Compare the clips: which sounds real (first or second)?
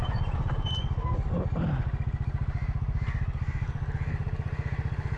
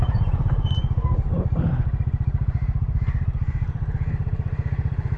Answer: first